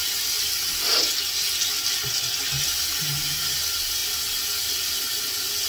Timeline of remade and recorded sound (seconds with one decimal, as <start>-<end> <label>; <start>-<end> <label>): 0.0-5.7 recorded